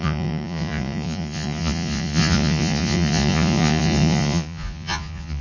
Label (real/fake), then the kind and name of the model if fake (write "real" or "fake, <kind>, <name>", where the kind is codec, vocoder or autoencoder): fake, vocoder, Vocos